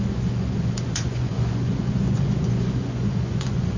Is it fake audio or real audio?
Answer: fake